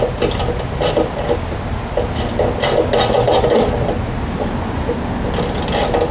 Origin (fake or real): real